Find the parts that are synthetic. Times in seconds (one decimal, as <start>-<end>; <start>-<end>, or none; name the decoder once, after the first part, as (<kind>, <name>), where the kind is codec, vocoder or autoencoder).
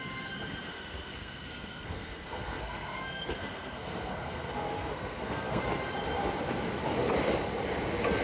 0.7-5.6 (codec, SNAC)